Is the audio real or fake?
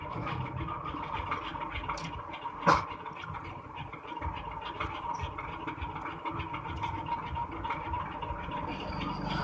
real